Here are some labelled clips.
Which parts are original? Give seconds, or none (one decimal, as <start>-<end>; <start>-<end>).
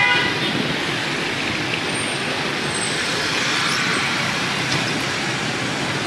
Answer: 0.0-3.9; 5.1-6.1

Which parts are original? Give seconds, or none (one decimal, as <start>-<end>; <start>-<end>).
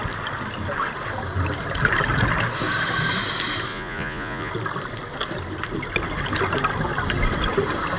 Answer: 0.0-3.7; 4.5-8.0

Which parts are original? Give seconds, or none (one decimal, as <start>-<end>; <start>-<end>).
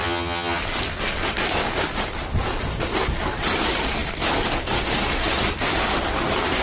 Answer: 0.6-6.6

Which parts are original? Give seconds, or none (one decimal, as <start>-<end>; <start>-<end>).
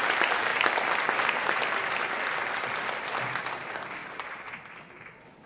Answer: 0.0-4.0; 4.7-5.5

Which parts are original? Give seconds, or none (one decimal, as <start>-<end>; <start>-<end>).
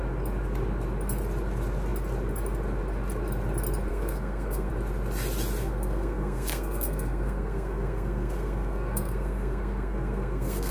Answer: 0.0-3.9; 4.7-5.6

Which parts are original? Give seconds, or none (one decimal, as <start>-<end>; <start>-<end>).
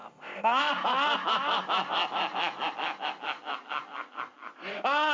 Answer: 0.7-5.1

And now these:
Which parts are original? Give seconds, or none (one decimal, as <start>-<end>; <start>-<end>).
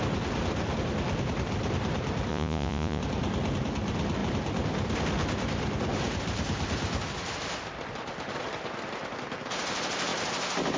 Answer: 0.0-2.3; 3.0-10.8